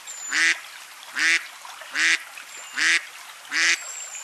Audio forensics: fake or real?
real